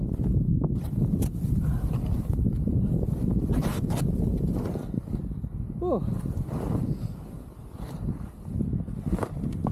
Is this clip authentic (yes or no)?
yes